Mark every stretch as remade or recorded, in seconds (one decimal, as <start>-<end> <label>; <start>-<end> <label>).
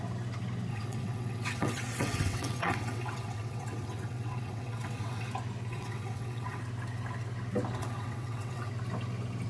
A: 0.0-0.7 recorded; 0.7-5.3 remade; 5.3-5.7 recorded; 5.7-6.6 remade; 6.6-7.8 recorded; 7.8-8.7 remade; 8.7-9.5 recorded